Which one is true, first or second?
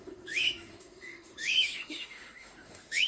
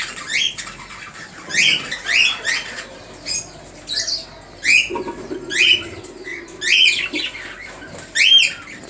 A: second